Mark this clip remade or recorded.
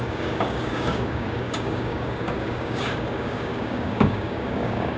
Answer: remade